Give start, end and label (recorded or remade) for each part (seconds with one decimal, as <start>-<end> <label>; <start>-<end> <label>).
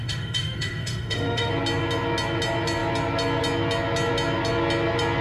0.0-1.5 remade; 1.5-5.2 recorded